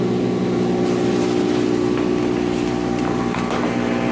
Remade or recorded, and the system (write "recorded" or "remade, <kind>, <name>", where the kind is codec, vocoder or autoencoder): recorded